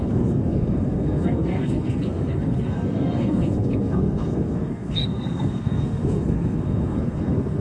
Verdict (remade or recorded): remade